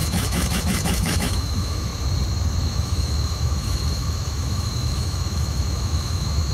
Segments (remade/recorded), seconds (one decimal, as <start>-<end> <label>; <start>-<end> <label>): 0.0-1.9 remade; 1.9-2.6 recorded; 2.6-6.5 remade